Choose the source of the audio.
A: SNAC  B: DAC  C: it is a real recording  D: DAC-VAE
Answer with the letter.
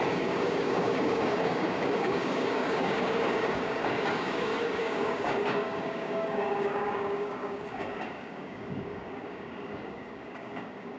B